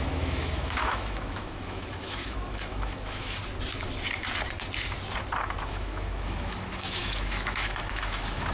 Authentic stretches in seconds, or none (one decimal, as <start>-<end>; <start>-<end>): 3.4-5.7